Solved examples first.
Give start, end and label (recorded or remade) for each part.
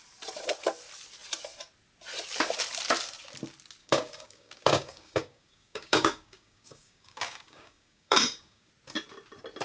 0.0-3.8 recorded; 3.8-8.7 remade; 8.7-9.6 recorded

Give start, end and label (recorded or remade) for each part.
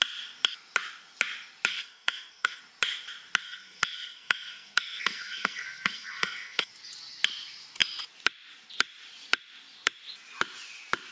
0.0-1.7 recorded; 1.7-2.6 remade; 2.6-3.4 recorded; 3.4-6.7 remade; 6.7-11.1 recorded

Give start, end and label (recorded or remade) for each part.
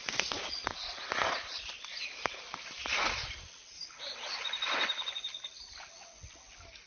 0.0-6.9 recorded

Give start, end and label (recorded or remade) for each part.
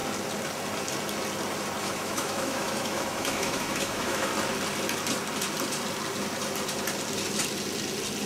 0.0-1.8 recorded; 1.8-4.3 remade; 4.3-8.3 recorded